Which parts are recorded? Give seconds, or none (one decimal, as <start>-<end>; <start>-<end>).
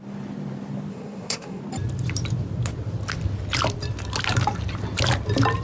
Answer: 0.0-0.9; 1.6-5.6